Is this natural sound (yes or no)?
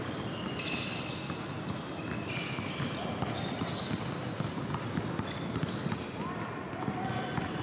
yes